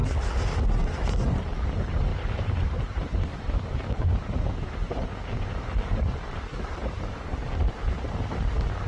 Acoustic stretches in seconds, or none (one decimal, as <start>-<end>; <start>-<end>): 0.0-1.1